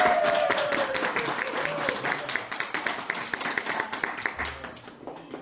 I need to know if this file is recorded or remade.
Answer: recorded